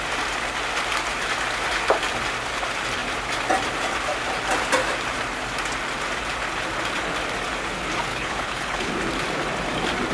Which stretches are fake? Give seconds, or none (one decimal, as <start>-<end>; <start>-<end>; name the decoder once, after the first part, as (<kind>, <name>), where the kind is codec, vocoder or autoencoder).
8.1-8.9 (codec, HILCodec)